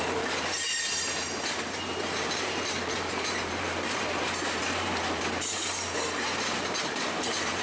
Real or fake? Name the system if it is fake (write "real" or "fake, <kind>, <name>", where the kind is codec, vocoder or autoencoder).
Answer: fake, vocoder, BigVGAN v2